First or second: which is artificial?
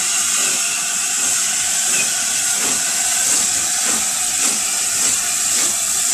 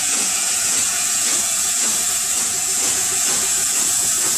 second